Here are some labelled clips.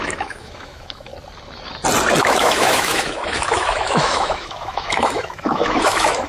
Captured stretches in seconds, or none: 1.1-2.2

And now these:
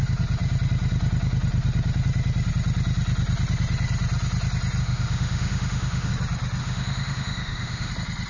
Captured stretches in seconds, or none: 0.0-4.8; 6.1-6.6; 7.9-8.3

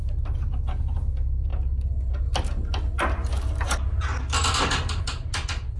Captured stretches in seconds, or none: 0.0-5.8

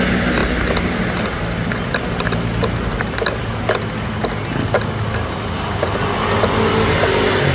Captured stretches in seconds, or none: 0.0-7.5

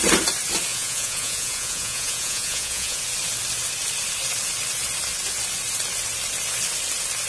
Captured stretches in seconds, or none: 0.0-0.7; 3.0-7.3

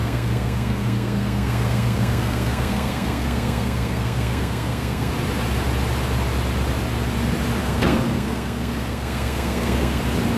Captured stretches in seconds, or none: 5.1-7.6; 10.0-10.4